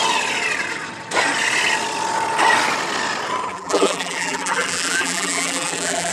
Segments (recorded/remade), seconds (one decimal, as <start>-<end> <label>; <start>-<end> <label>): 0.0-3.5 recorded; 3.5-6.1 remade